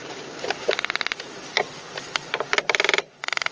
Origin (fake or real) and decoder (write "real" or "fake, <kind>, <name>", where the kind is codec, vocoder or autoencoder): real